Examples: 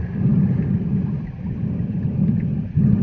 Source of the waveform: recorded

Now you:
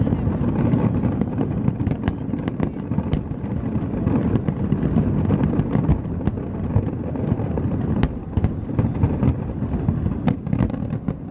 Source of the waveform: recorded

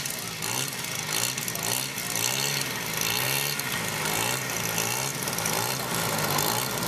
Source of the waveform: recorded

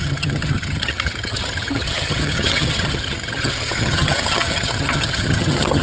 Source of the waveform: remade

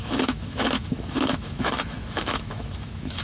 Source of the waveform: remade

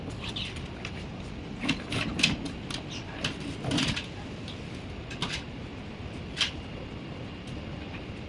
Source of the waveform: recorded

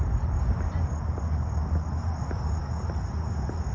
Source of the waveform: recorded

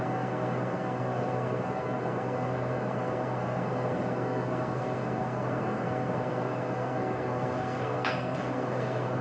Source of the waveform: remade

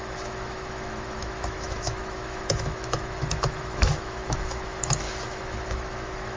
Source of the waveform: remade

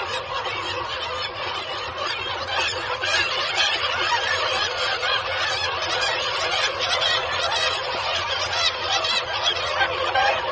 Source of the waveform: remade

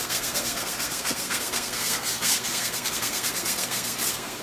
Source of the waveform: remade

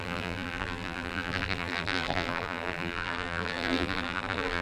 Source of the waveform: remade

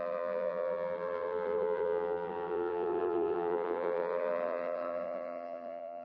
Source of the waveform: remade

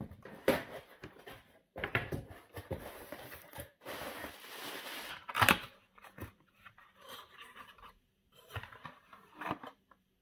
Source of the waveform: remade